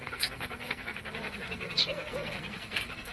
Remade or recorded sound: remade